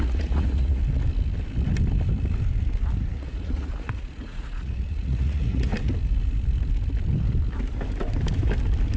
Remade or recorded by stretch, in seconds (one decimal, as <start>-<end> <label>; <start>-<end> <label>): 0.0-0.8 remade; 0.8-3.0 recorded; 3.0-5.7 remade; 5.7-9.0 recorded